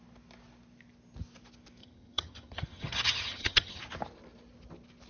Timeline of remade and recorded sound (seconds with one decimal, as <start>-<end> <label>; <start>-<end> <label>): 0.0-1.8 recorded; 1.8-3.8 remade; 3.8-5.1 recorded